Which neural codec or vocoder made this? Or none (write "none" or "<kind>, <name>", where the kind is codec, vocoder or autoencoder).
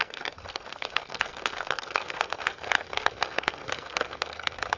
codec, SNAC